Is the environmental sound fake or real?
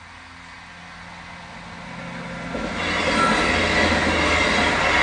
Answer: real